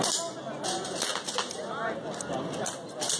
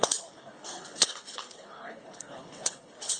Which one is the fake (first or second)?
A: second